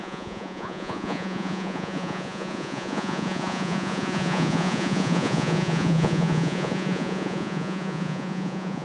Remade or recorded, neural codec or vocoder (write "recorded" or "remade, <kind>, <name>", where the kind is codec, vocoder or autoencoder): remade, vocoder, Vocos